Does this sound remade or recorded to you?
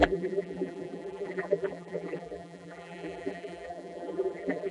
remade